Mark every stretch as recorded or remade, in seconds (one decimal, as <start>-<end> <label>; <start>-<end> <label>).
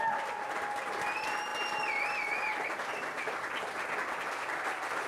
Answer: 0.0-5.1 recorded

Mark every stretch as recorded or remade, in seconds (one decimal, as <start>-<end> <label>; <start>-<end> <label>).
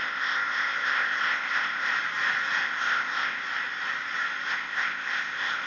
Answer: 0.0-1.9 remade; 1.9-2.6 recorded; 2.6-3.4 remade; 3.4-4.5 recorded; 4.5-5.7 remade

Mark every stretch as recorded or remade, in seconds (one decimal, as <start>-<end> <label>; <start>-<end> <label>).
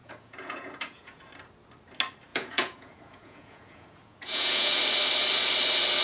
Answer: 0.0-1.2 remade; 1.2-2.3 recorded; 2.3-4.8 remade; 4.8-6.0 recorded